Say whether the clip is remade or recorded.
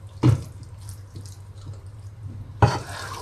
recorded